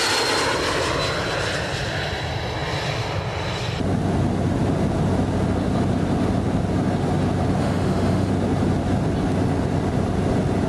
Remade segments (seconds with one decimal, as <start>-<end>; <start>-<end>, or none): 7.6-8.3